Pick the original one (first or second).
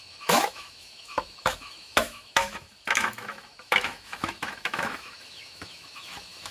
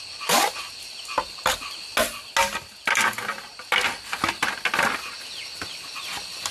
second